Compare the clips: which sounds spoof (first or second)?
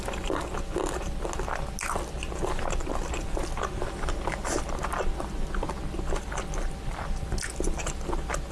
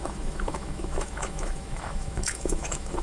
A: second